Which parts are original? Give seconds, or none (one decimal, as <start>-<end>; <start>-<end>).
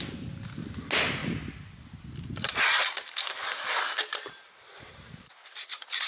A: 0.0-6.1